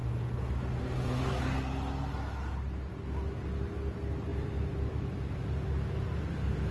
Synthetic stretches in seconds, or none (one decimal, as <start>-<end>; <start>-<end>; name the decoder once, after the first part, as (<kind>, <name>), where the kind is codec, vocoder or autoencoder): 4.3-5.4 (vocoder, BigVGAN v2)